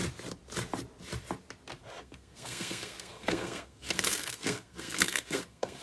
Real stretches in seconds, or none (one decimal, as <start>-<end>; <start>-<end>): 0.0-2.0